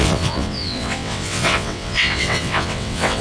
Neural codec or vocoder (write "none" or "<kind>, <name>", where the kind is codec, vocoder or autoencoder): vocoder, WaveNeXt